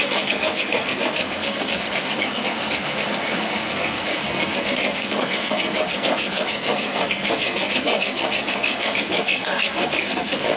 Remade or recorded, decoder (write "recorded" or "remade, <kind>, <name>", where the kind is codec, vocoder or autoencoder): remade, codec, SNAC